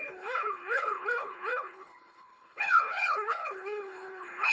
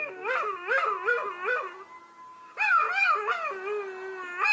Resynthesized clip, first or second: first